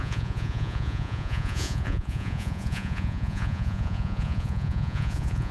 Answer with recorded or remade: remade